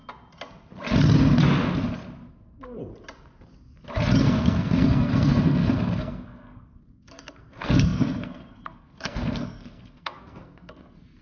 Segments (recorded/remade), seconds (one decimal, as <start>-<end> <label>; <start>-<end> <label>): 0.0-2.3 recorded; 2.3-2.8 remade; 2.8-4.2 recorded; 4.2-11.2 remade